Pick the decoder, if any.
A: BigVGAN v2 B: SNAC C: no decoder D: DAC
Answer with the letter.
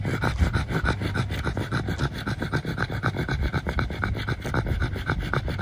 C